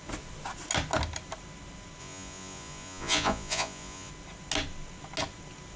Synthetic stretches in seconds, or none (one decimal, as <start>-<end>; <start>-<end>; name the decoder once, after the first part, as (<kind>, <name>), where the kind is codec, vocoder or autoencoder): 2.0-4.1 (vocoder, Vocos)